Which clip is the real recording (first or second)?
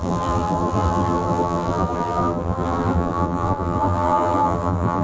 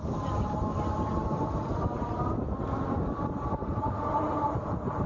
second